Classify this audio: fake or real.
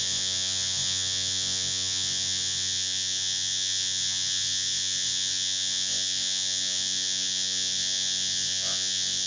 fake